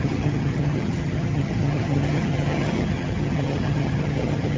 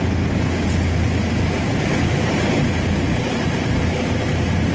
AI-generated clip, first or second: first